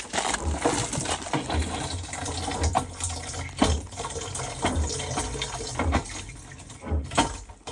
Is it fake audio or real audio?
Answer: real